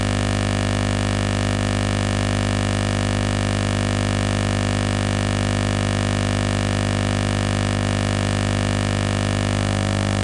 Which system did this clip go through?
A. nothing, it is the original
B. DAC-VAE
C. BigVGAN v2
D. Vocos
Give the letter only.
A